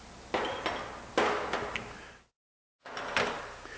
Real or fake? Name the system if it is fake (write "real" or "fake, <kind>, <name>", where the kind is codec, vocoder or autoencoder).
real